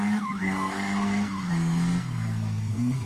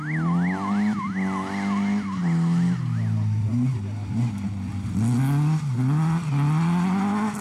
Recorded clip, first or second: second